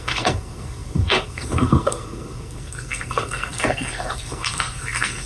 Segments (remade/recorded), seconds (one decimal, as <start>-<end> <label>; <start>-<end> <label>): 0.0-5.3 remade